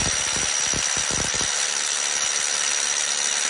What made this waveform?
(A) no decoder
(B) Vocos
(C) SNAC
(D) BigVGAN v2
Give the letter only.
A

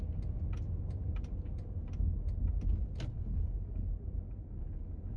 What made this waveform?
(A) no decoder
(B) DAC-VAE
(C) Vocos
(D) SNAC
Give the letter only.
A